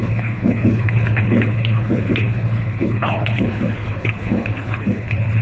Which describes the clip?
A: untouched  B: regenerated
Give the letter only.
B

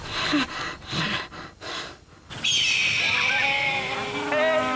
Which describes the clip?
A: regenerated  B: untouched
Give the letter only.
B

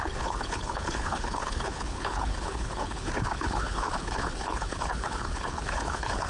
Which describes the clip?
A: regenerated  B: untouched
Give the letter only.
A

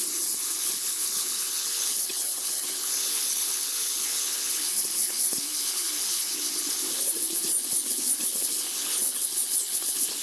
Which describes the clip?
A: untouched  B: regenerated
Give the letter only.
B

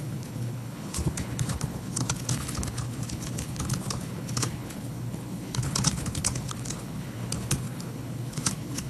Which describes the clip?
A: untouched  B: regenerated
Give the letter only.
B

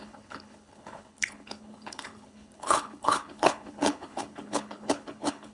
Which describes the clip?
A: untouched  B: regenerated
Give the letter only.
B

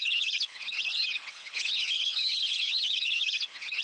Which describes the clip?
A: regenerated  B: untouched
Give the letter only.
A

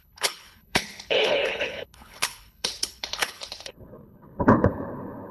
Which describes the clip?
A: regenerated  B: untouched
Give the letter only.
A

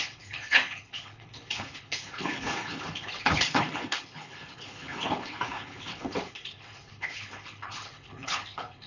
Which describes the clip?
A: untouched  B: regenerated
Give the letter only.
B